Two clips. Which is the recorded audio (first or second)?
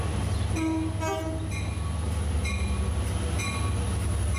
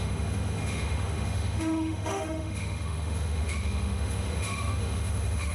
first